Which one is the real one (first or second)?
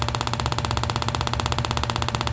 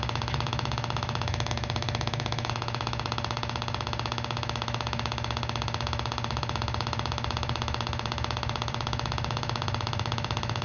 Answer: first